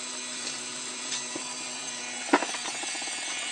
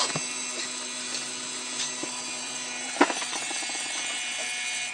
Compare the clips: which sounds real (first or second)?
second